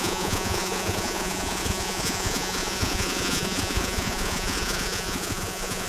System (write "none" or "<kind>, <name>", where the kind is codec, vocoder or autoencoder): vocoder, Vocos